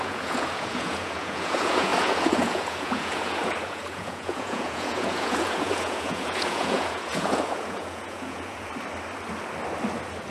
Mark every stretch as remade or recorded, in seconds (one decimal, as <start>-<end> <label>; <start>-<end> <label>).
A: 0.0-8.7 remade; 8.7-10.3 recorded